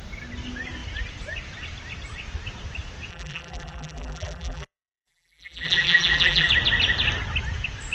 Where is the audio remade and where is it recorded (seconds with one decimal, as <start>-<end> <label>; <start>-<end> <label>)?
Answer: 0.0-3.1 recorded; 3.1-6.5 remade; 6.5-7.9 recorded